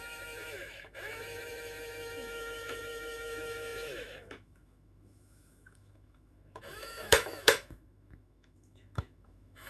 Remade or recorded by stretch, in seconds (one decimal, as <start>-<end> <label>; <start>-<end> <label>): 0.0-9.7 remade